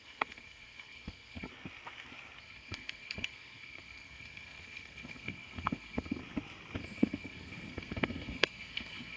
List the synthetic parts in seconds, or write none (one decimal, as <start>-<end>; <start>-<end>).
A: 0.0-1.5; 2.4-6.2; 6.8-9.2